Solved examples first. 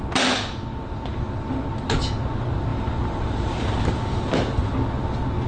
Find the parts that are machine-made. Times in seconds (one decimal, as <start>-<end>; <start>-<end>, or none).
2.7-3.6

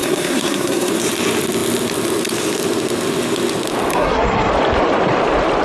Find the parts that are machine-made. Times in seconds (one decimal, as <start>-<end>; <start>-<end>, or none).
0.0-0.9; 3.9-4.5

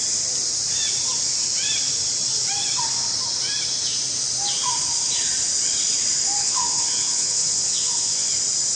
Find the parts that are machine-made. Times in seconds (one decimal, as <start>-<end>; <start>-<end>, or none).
6.4-8.3